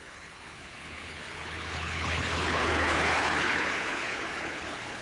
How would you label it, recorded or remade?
remade